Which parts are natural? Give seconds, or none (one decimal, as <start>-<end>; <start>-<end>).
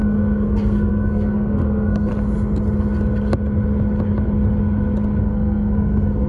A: 2.1-5.2